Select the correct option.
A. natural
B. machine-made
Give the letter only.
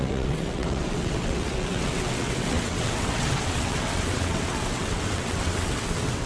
B